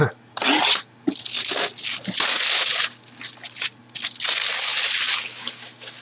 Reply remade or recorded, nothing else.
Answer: recorded